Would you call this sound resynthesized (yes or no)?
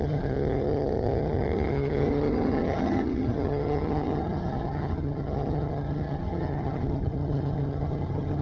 yes